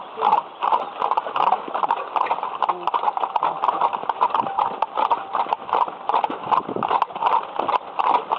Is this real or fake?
real